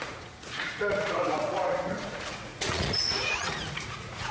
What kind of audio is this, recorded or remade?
remade